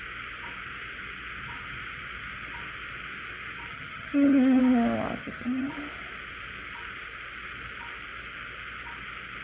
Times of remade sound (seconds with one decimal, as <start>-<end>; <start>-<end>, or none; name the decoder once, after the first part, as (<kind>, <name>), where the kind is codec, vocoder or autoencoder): 3.7-4.6 (vocoder, HiFi-GAN); 5.2-5.7

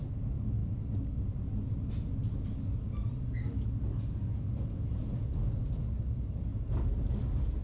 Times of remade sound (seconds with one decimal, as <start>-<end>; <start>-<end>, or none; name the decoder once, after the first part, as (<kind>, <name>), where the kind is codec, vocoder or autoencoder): none

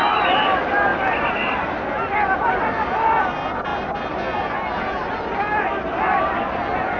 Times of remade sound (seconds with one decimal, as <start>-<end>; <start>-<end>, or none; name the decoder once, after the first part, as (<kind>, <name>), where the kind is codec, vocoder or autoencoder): none

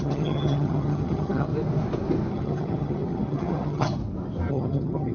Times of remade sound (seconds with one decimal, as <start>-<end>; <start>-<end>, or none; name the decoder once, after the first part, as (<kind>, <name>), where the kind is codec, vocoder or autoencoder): 0.0-1.5 (vocoder, HiFi-GAN); 2.3-4.0; 4.5-5.1

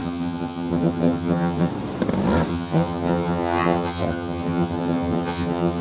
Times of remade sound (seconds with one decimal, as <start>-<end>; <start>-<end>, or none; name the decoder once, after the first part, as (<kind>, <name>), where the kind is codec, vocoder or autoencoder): 0.0-1.7 (vocoder, HiFi-GAN); 2.5-5.8

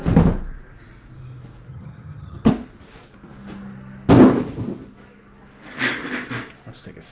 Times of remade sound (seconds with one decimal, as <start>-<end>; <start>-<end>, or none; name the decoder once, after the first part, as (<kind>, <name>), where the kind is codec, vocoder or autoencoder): 1.7-2.5 (vocoder, HiFi-GAN)

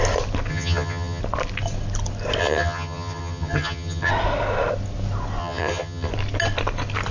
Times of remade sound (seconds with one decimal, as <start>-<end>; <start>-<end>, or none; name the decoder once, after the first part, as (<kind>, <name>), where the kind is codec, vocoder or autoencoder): 0.5-1.2 (vocoder, HiFi-GAN); 2.4-4.1; 5.4-6.1